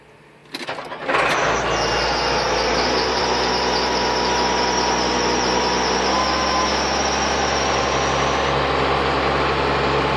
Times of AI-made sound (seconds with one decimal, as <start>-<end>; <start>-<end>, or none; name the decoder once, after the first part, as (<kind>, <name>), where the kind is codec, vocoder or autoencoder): none